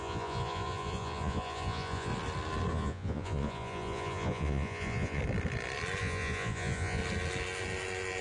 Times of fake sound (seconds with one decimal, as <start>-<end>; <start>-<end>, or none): 0.0-2.1; 2.7-5.2; 6.0-7.0